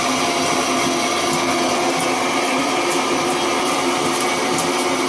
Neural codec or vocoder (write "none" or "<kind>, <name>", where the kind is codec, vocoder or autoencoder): none